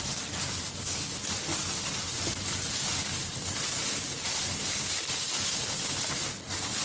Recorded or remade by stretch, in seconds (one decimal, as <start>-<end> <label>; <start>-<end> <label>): 0.0-6.8 recorded